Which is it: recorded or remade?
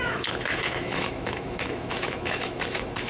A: remade